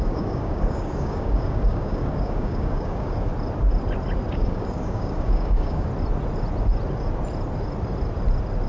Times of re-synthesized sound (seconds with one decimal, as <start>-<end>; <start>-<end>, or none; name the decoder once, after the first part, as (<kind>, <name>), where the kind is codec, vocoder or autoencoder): 0.0-3.3 (codec, DAC); 4.3-5.9